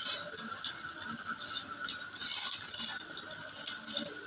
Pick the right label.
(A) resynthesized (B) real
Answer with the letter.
A